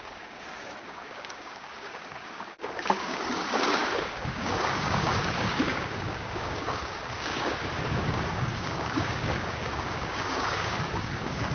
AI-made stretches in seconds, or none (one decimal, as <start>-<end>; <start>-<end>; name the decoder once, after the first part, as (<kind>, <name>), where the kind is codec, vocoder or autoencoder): 0.0-11.5 (codec, DAC)